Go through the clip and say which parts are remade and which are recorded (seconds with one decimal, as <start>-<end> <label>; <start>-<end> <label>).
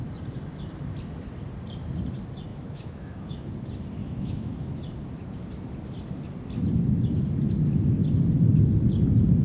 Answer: 0.0-2.5 recorded; 2.5-3.5 remade; 3.5-4.0 recorded; 4.0-4.7 remade; 4.7-9.4 recorded